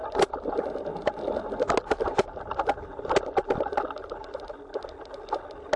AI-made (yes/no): no